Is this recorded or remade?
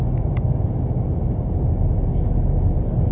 recorded